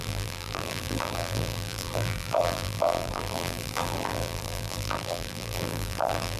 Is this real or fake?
fake